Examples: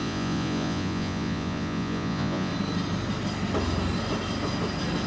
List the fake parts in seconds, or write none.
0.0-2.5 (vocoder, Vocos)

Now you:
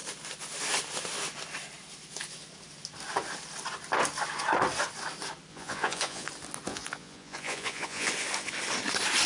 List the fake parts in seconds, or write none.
5.5-6.3 (vocoder, Vocos); 6.7-8.1

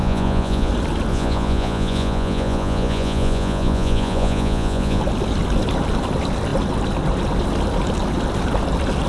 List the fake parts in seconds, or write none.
0.0-0.7 (vocoder, Vocos); 1.1-5.0

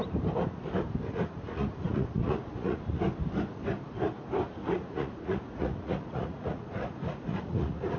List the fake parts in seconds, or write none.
1.1-3.0 (vocoder, Vocos); 4.6-8.0